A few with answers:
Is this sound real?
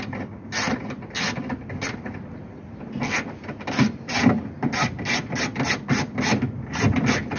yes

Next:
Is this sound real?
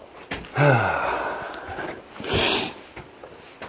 yes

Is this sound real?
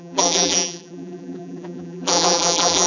no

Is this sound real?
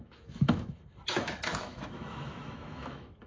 no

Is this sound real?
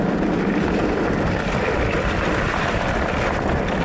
yes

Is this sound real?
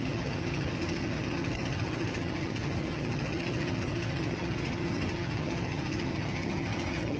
no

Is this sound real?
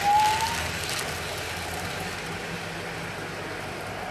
yes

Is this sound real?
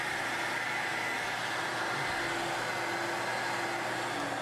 yes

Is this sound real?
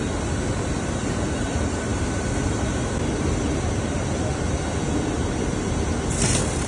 yes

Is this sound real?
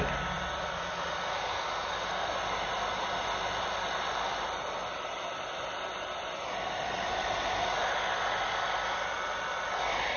no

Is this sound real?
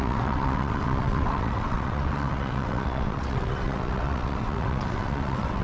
no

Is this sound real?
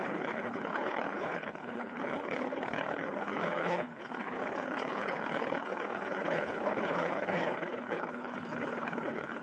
no